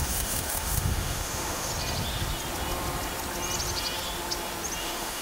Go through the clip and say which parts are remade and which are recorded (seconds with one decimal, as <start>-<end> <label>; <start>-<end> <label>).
0.0-1.7 remade; 1.7-4.8 recorded; 4.8-5.2 remade